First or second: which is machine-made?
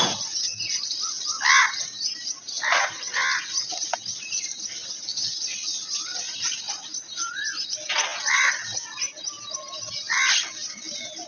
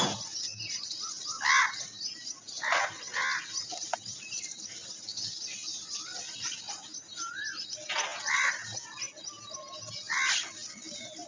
first